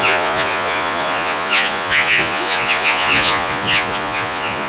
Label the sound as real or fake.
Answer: fake